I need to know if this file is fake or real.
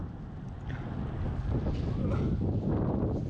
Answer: real